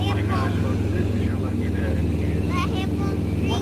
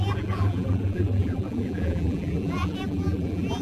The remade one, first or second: second